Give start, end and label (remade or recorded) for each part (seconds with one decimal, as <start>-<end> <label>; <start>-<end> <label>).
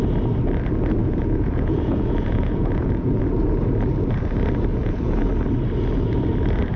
0.0-1.0 recorded; 1.0-3.2 remade; 3.2-4.7 recorded; 4.7-5.3 remade; 5.3-6.8 recorded